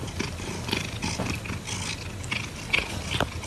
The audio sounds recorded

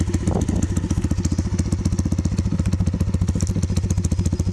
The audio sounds recorded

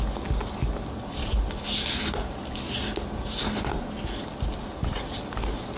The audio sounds recorded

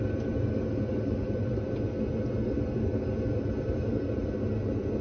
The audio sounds recorded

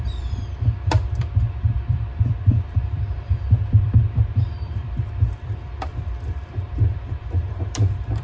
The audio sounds remade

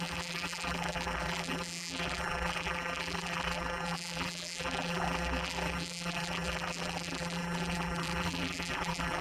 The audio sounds remade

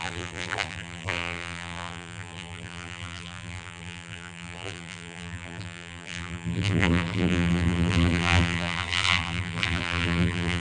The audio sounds remade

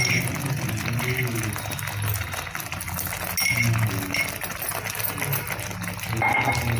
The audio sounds recorded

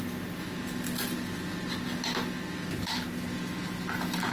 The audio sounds recorded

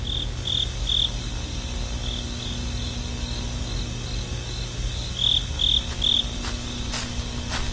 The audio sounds recorded